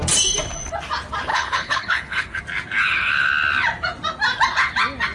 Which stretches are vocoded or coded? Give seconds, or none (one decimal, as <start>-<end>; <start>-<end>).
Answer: 1.3-2.4; 2.8-3.3